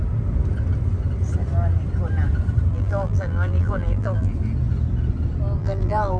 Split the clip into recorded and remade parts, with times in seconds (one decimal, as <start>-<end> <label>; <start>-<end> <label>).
0.0-2.7 recorded; 2.7-4.3 remade; 4.3-5.6 recorded; 5.6-6.2 remade